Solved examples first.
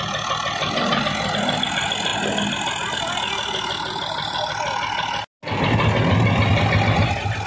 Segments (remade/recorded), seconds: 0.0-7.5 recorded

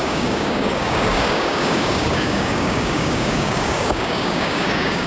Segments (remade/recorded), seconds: 0.0-5.1 remade

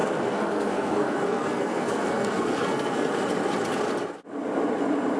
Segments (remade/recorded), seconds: 0.0-3.1 remade; 3.1-5.2 recorded

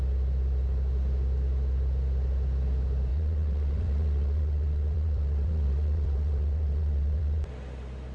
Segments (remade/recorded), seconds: 0.0-3.1 recorded; 3.1-7.5 remade; 7.5-8.1 recorded

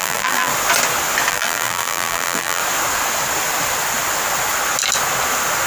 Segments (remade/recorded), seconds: 0.0-0.5 remade; 0.5-1.3 recorded; 1.3-2.6 remade; 2.6-5.7 recorded

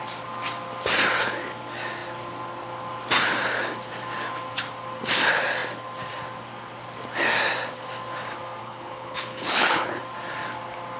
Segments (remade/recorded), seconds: 0.0-8.6 recorded; 8.6-10.0 remade; 10.0-11.0 recorded

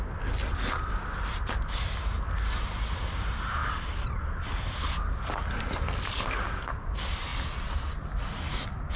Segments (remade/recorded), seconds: 0.0-9.0 recorded